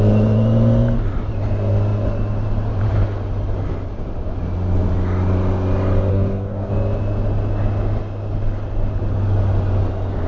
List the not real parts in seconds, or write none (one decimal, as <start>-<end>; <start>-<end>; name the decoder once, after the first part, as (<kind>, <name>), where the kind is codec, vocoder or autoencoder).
6.1-6.7 (codec, DAC)